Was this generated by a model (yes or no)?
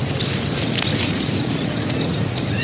yes